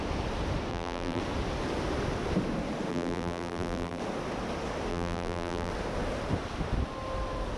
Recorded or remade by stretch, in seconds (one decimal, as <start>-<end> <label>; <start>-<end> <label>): 0.0-0.7 recorded; 0.7-1.2 remade; 1.2-2.9 recorded; 2.9-4.0 remade; 4.0-4.9 recorded; 4.9-5.7 remade; 5.7-7.6 recorded